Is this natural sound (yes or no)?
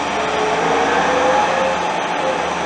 yes